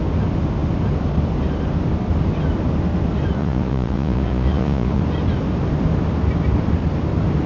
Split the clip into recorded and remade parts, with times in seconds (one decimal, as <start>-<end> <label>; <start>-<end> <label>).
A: 0.0-3.4 recorded; 3.4-5.0 remade; 5.0-7.5 recorded